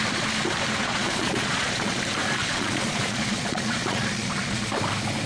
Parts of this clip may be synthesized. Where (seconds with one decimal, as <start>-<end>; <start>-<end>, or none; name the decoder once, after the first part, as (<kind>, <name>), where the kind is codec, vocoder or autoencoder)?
0.8-2.0 (vocoder, Vocos); 2.4-4.7